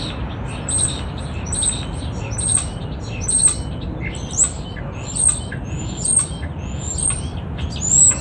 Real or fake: real